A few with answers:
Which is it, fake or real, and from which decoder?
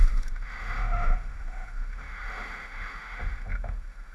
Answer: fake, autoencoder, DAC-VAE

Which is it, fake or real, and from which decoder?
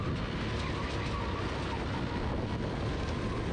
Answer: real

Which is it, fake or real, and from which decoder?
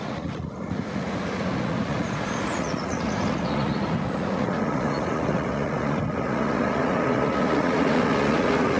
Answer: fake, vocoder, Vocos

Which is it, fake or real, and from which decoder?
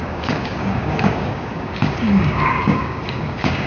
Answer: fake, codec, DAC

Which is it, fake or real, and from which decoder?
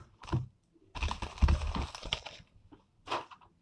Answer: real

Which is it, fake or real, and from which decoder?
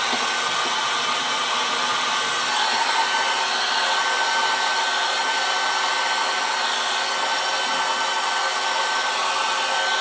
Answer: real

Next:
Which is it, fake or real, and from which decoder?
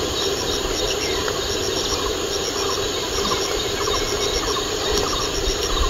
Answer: real